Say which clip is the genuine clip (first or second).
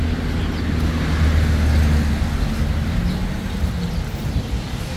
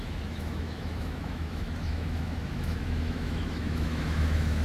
first